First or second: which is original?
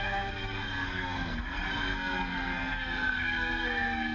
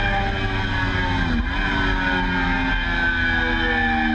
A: second